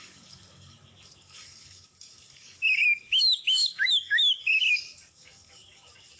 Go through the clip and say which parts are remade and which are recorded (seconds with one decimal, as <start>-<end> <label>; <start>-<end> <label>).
0.0-6.2 remade